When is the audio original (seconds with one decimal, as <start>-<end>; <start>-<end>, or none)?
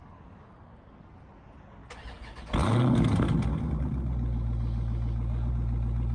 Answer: 0.0-6.1